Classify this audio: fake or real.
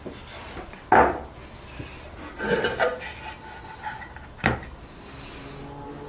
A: real